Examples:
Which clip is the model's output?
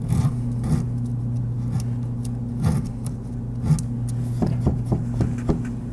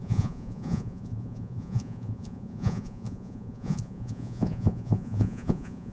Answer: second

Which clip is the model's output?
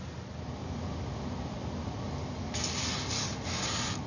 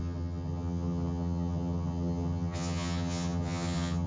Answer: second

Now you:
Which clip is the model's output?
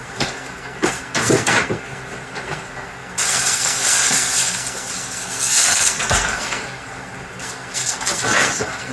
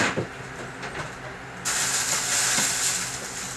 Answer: first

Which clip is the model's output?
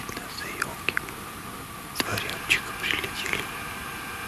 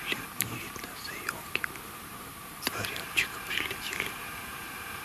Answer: second